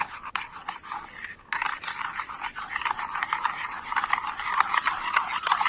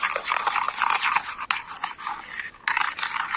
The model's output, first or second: first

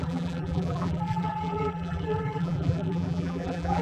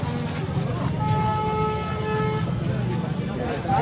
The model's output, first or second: first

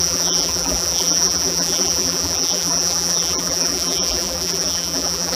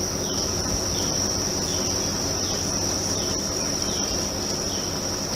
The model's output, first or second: first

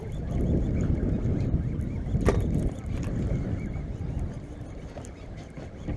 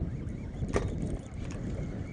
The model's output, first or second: second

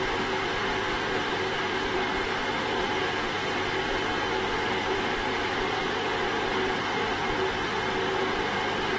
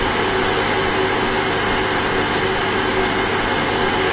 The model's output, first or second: first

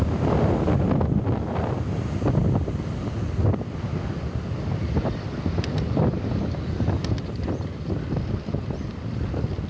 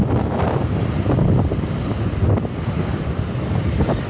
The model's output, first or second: second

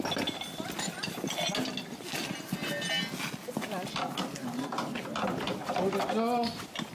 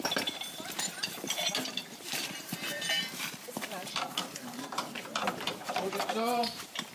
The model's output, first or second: second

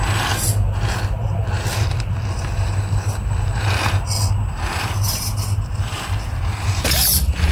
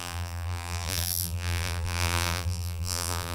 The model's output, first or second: second